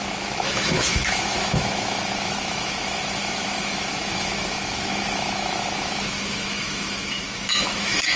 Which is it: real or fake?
fake